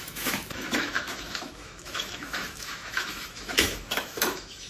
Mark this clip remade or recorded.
remade